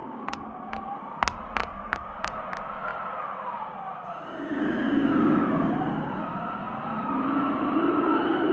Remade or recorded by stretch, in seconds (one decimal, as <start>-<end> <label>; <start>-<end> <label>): 0.0-0.7 remade; 0.7-1.6 recorded; 1.6-2.4 remade; 2.4-4.6 recorded; 4.6-5.7 remade; 5.7-8.5 recorded

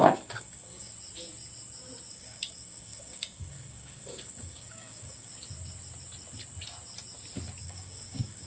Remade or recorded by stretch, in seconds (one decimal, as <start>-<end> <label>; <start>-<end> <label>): 0.0-0.9 remade; 0.9-2.1 recorded; 2.1-5.3 remade; 5.3-7.6 recorded; 7.6-8.5 remade

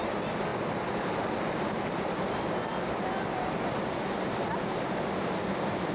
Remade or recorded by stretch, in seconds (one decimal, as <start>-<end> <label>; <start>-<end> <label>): 0.0-5.9 recorded

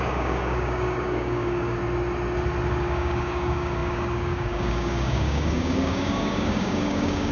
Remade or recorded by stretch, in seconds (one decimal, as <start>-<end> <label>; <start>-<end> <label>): 0.0-1.8 remade; 1.8-2.7 recorded; 2.7-7.3 remade

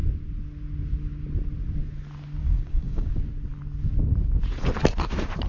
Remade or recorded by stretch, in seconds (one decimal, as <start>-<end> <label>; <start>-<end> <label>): 0.0-2.4 recorded; 2.4-3.1 remade; 3.1-5.5 recorded

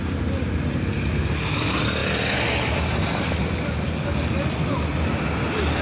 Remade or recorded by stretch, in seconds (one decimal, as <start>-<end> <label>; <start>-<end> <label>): 0.0-5.8 recorded

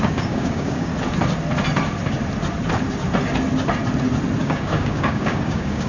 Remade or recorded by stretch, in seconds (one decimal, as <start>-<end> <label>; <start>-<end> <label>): 0.0-0.9 remade; 0.9-4.4 recorded; 4.4-5.9 remade